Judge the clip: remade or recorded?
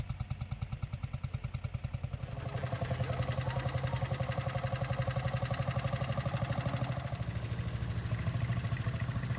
recorded